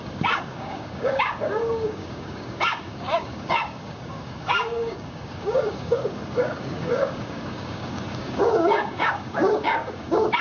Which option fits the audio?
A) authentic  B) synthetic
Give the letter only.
B